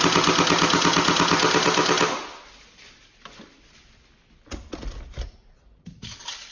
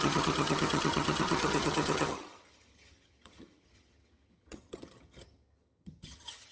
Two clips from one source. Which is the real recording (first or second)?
first